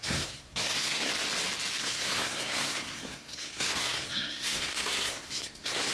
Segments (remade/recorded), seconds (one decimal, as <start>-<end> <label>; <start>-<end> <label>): 0.0-1.1 remade; 1.1-1.8 recorded; 1.8-5.9 remade